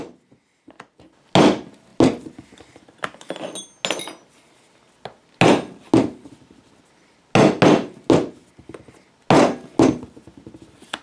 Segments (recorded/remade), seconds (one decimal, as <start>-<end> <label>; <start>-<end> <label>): 0.0-11.0 recorded